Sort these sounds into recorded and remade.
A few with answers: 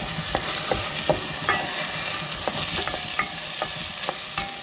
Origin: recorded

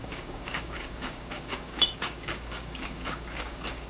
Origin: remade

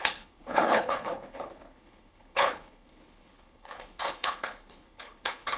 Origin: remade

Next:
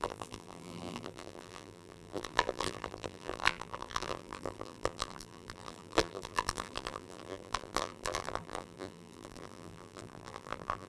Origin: remade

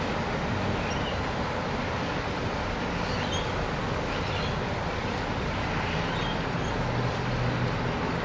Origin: recorded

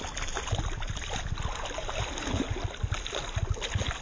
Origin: recorded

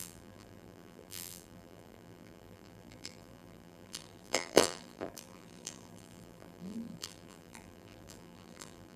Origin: remade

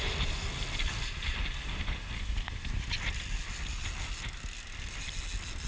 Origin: recorded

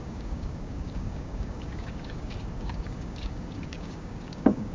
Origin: remade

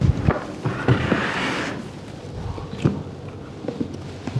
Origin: recorded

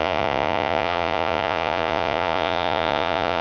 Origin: remade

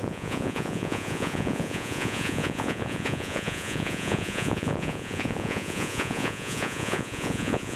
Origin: remade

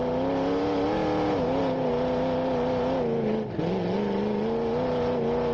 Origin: recorded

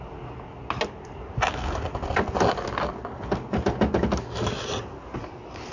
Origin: recorded